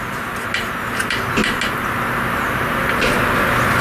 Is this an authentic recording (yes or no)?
yes